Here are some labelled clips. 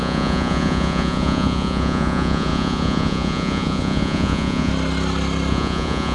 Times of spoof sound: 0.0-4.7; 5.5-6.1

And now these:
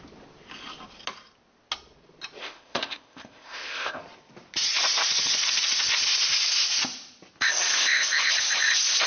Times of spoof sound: 2.4-4.0; 7.7-8.3